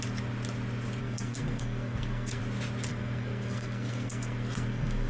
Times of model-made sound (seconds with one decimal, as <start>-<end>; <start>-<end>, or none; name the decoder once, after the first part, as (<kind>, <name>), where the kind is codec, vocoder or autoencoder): 1.0-2.4 (codec, SNAC); 2.9-5.1